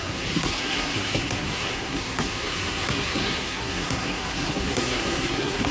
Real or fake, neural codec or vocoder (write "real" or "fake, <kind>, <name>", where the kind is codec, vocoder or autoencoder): fake, codec, SNAC